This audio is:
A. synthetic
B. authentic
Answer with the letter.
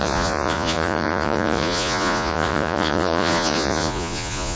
A